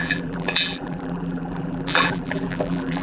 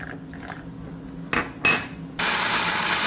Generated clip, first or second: first